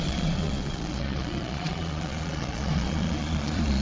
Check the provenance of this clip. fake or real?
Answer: fake